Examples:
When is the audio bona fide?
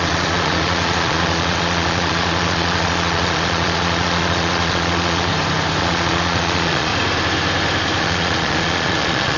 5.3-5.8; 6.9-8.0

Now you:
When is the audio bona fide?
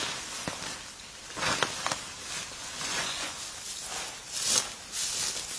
0.0-2.6; 3.4-5.6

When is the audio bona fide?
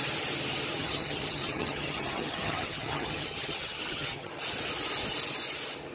0.0-0.8; 4.3-5.9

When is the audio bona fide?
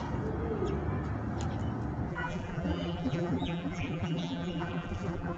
0.0-2.1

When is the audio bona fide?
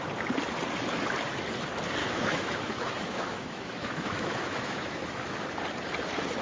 0.0-2.0; 5.4-6.4